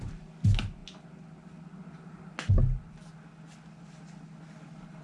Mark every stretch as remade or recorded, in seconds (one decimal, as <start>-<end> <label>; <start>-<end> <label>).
0.0-5.0 recorded